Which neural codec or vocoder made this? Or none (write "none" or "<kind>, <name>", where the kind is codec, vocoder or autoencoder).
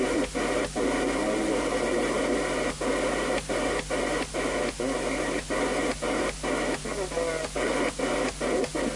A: none